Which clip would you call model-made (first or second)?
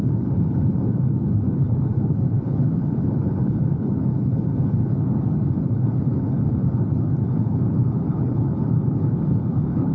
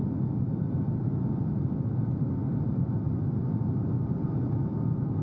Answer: first